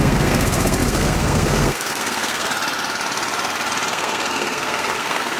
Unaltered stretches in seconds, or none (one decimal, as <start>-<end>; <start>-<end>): 2.5-3.9